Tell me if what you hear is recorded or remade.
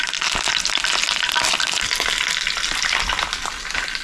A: recorded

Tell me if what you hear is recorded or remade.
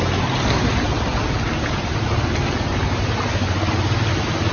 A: recorded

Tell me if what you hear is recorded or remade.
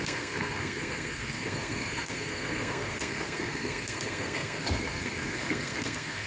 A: remade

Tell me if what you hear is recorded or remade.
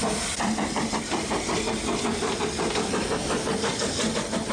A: recorded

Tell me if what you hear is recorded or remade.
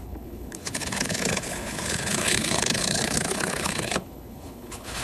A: remade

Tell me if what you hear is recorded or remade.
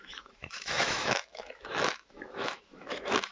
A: remade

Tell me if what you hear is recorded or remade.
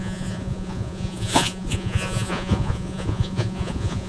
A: remade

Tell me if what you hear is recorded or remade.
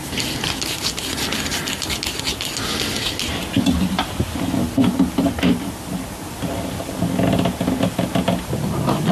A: recorded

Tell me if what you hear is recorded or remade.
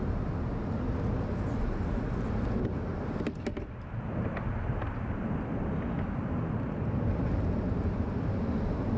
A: recorded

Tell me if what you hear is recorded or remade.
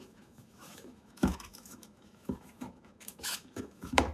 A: remade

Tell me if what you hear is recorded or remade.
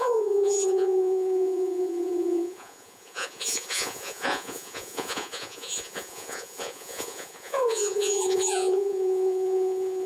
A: remade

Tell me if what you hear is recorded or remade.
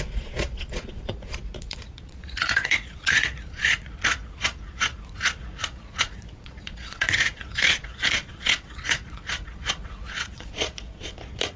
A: remade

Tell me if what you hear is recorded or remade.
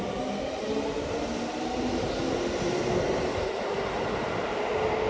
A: recorded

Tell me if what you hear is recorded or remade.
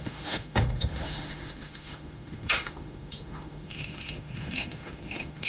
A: remade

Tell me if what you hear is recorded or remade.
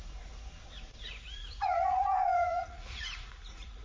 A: remade